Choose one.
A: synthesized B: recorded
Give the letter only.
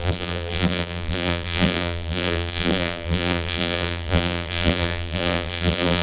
A